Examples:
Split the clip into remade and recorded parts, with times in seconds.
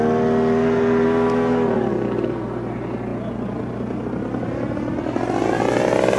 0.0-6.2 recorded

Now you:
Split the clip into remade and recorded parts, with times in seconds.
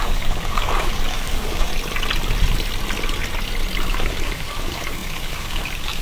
0.0-1.7 remade; 1.7-3.9 recorded; 3.9-6.0 remade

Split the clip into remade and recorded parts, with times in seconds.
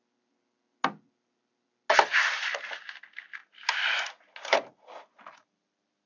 0.0-6.1 recorded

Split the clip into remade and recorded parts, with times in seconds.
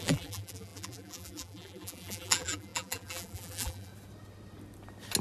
0.0-3.9 remade; 3.9-5.2 recorded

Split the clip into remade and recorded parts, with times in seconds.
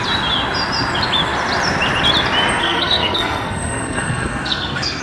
0.0-2.6 recorded; 2.6-5.0 remade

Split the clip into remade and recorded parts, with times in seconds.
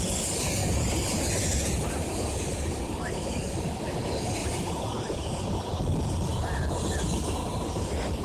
0.0-0.6 recorded; 0.6-3.6 remade; 3.6-4.4 recorded; 4.4-5.8 remade; 5.8-8.2 recorded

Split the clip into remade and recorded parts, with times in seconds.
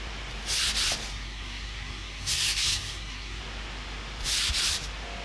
0.0-1.1 recorded; 1.1-3.4 remade; 3.4-5.2 recorded